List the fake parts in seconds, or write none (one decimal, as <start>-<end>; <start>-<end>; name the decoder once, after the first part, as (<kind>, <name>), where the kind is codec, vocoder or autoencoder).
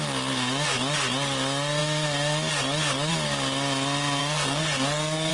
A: 4.2-5.3 (codec, SNAC)